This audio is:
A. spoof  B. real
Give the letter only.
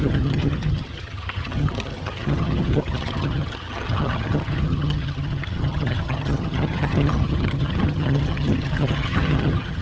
A